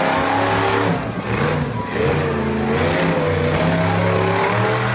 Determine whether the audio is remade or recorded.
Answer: recorded